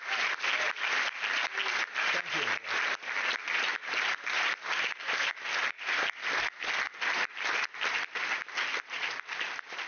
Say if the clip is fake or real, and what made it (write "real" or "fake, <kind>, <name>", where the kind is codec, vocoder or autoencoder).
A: real